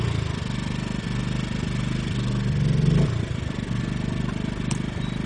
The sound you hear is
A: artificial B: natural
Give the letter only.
B